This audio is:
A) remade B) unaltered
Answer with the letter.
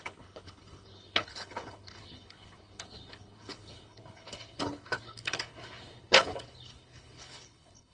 A